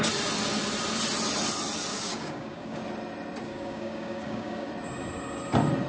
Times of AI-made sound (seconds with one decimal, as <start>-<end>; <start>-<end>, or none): 1.9-2.8; 3.5-4.7